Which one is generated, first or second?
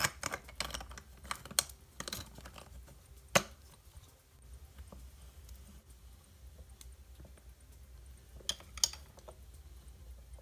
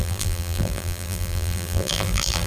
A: second